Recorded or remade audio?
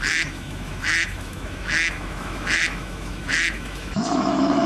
remade